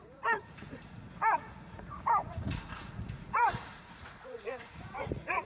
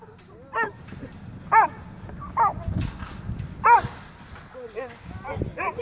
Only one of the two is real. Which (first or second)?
second